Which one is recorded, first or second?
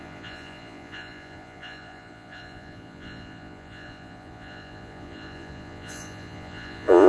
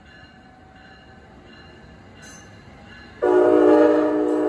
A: second